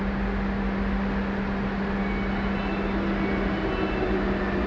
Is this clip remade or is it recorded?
recorded